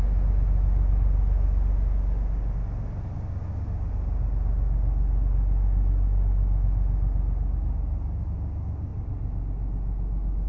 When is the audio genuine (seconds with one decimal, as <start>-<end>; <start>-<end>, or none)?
0.0-10.5